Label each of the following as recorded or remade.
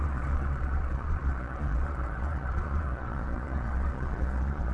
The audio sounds remade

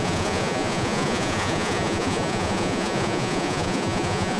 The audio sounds remade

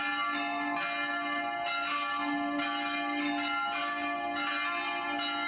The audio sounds recorded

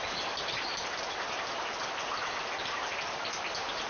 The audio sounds recorded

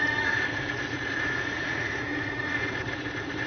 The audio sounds remade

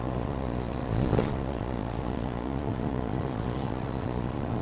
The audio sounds remade